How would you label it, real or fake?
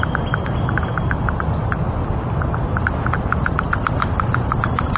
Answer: real